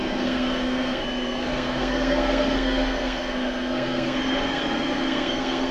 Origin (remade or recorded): remade